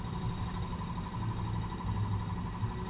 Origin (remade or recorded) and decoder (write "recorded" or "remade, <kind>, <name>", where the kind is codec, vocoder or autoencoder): recorded